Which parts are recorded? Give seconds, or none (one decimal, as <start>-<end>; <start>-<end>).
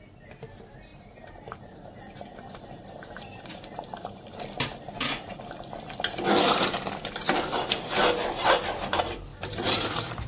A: 0.0-0.9; 5.3-9.3